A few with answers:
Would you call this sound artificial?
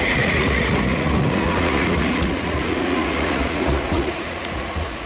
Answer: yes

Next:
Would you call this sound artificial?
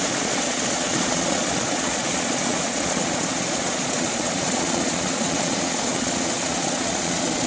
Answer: yes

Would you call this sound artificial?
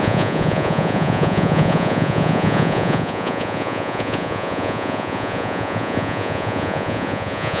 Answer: yes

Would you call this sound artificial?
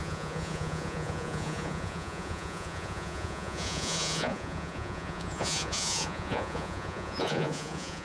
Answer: yes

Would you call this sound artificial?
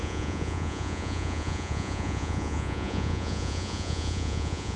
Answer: yes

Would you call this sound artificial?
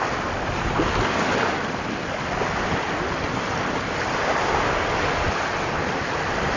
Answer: no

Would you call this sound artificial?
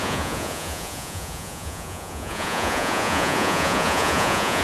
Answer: yes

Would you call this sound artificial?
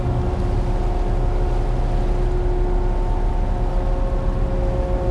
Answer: no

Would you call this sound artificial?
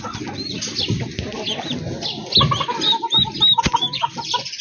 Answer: no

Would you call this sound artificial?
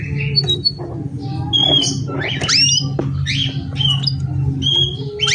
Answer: no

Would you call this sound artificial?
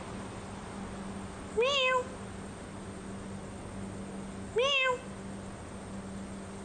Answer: no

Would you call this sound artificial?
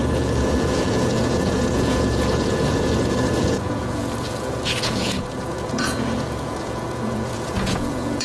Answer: yes